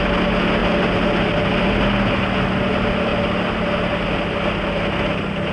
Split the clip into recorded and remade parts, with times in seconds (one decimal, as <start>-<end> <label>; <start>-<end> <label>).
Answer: 0.0-5.5 recorded